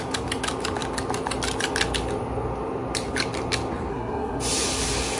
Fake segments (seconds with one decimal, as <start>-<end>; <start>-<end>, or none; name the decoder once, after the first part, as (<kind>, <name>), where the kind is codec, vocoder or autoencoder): 3.9-4.4 (codec, SNAC)